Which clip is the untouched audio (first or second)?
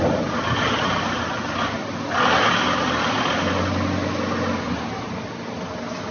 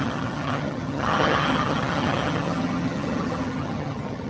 first